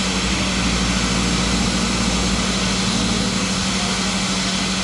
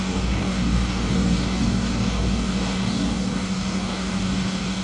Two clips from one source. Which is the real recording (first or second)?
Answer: first